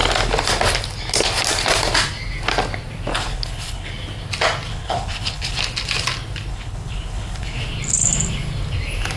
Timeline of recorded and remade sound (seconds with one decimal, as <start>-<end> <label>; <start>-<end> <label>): 0.0-3.1 recorded; 3.1-3.9 remade; 3.9-4.7 recorded; 4.7-5.6 remade; 5.6-6.5 recorded; 6.5-7.6 remade; 7.6-9.2 recorded